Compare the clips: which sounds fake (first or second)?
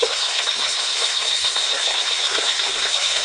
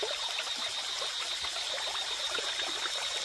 first